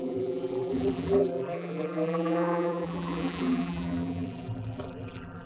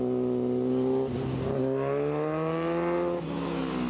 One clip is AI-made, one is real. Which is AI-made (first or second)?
first